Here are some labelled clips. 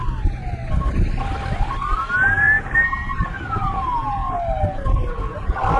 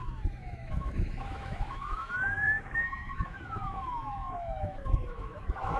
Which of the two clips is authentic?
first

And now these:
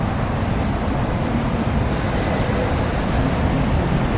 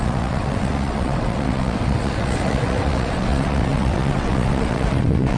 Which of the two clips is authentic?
first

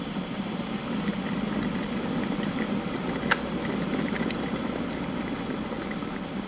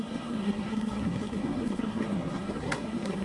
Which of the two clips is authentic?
first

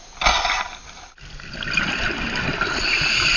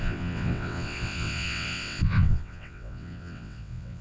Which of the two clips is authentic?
first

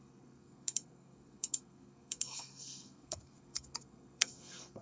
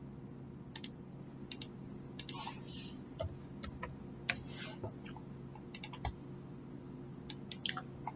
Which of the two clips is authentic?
second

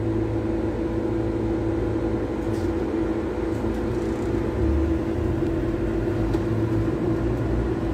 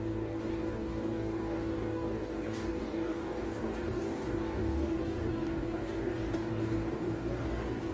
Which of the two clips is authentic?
first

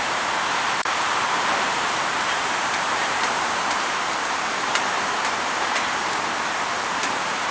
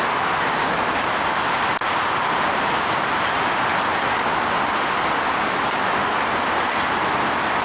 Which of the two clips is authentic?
second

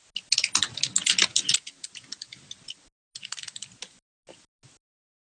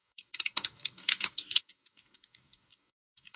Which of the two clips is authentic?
first